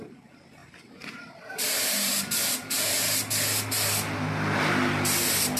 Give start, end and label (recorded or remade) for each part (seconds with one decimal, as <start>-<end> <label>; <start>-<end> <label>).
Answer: 0.0-2.1 remade; 2.1-5.6 recorded